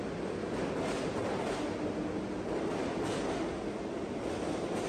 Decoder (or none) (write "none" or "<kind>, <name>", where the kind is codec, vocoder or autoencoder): none